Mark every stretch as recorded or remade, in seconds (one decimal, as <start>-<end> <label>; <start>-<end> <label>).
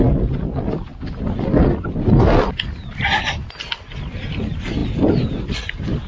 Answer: 0.0-6.1 recorded